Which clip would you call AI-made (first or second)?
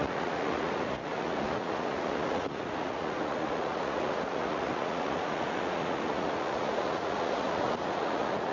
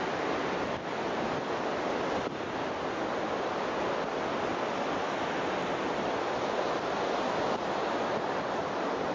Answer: first